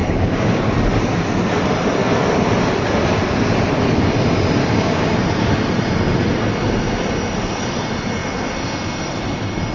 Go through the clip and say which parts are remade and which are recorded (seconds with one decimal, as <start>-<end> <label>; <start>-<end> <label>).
0.0-0.6 remade; 0.6-4.6 recorded; 4.6-5.2 remade; 5.2-9.7 recorded